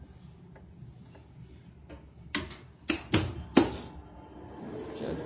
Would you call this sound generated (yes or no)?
no